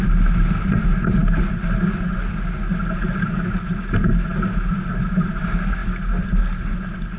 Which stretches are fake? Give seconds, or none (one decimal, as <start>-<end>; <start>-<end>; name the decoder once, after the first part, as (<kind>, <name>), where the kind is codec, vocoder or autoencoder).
none